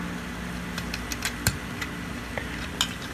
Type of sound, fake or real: real